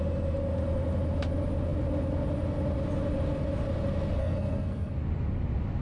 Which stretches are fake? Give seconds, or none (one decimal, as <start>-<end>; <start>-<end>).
4.2-4.9